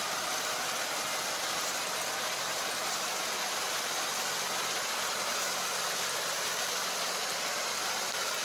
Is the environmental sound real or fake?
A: real